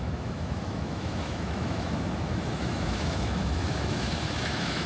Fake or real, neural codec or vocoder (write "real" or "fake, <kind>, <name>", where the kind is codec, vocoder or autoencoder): fake, autoencoder, DAC-VAE